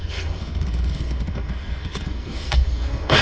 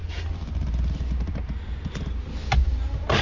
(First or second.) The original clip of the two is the second